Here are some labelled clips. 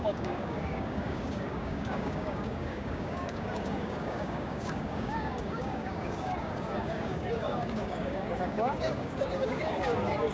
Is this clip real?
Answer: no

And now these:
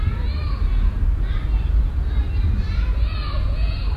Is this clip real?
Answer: yes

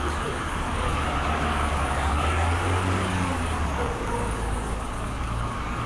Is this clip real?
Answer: no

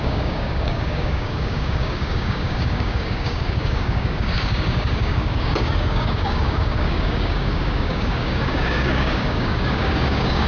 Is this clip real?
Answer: no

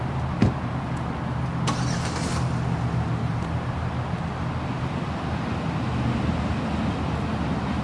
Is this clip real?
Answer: yes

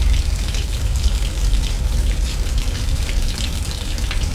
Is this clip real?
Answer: no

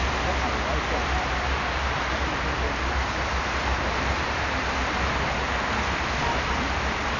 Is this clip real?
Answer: yes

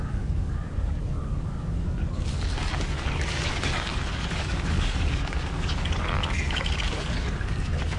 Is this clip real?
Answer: no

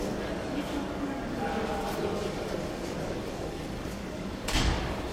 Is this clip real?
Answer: no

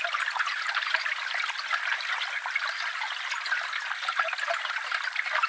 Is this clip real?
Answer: yes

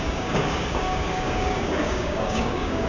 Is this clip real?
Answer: no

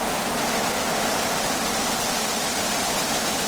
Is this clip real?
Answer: yes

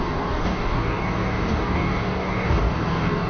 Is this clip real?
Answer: no